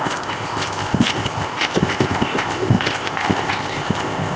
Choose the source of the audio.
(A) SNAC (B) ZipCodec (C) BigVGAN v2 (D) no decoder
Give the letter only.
B